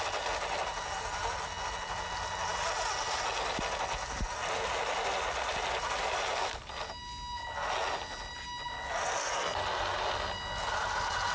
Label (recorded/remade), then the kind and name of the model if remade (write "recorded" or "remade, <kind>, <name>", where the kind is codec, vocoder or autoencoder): recorded